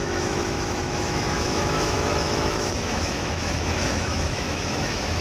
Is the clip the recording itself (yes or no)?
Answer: no